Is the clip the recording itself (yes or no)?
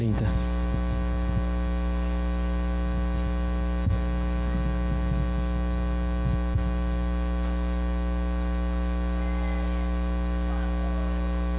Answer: yes